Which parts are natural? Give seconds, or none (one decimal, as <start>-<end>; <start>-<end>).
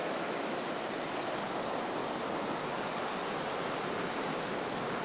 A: 0.0-5.0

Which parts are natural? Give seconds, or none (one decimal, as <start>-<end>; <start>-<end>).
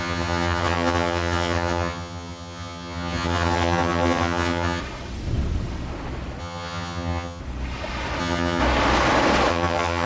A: 4.8-6.4; 7.4-8.2; 8.6-9.5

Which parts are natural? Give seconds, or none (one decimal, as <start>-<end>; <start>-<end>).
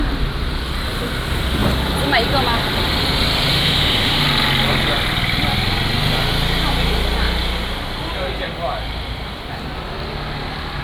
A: 0.0-3.5; 4.2-10.8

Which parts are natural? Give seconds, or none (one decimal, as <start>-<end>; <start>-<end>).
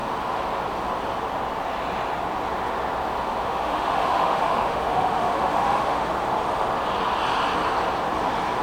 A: 0.0-3.4; 6.1-8.6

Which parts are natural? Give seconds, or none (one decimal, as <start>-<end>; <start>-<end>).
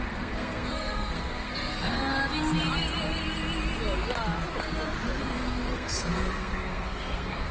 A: 2.1-5.2